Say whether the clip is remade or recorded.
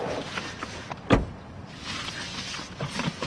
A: recorded